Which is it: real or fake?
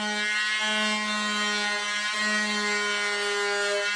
real